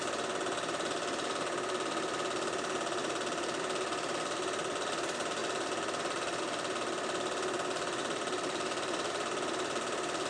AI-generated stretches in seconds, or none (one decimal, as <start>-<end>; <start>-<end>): 3.0-3.6; 8.0-9.1